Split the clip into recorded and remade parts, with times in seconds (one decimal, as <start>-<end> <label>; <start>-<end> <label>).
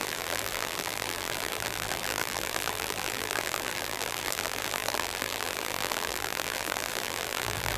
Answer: 0.0-7.8 remade